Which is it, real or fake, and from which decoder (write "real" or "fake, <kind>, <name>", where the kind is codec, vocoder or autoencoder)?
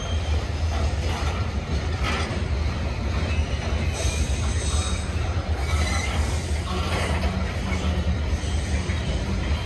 real